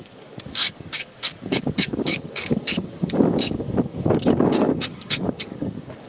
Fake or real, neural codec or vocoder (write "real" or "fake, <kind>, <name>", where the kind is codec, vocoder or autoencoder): fake, codec, DAC